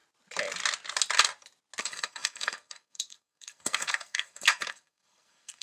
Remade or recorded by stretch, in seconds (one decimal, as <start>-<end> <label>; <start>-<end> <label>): 0.0-1.8 recorded; 1.8-5.6 remade